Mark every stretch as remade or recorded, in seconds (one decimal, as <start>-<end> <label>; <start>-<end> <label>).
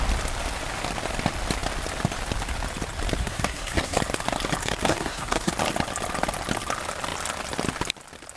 0.0-3.2 recorded; 3.2-4.0 remade; 4.0-4.6 recorded; 4.6-5.5 remade; 5.5-8.4 recorded